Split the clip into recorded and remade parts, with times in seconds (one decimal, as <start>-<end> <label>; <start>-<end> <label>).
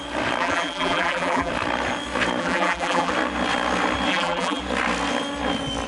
0.0-0.4 recorded; 0.4-1.5 remade; 1.5-2.4 recorded; 2.4-3.1 remade; 3.1-4.1 recorded; 4.1-4.6 remade; 4.6-5.9 recorded